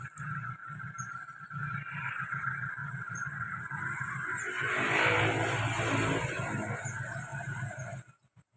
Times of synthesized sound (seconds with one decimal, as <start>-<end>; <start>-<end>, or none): none